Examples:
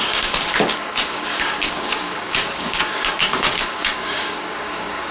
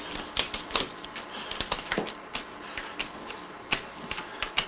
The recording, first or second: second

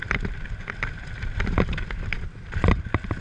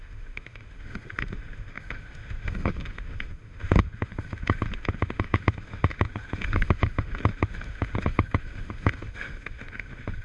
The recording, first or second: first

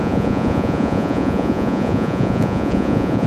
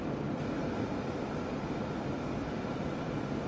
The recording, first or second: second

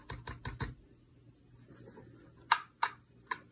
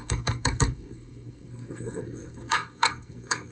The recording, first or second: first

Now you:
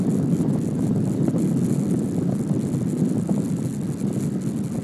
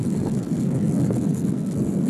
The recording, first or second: first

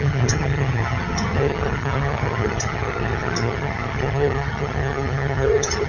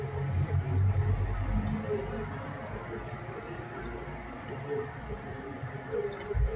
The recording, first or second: second